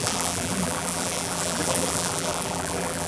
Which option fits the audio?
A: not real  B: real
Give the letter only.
A